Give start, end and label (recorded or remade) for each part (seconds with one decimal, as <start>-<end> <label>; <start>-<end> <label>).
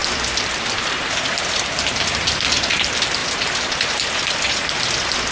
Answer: 0.0-1.7 remade; 1.7-3.2 recorded; 3.2-5.3 remade